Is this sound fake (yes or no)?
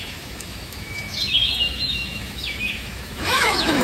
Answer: yes